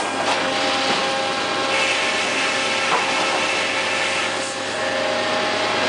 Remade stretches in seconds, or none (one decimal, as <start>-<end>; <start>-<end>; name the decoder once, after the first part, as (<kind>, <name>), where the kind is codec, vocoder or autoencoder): none